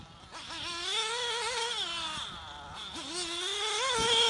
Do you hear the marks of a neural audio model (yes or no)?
no